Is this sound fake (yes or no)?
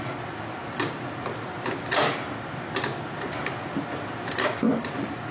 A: no